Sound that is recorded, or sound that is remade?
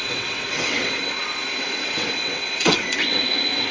remade